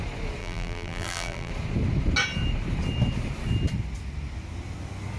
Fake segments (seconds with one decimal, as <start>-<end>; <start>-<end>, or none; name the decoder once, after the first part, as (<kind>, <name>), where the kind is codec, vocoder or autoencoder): 0.4-1.5 (vocoder, BigVGAN v2)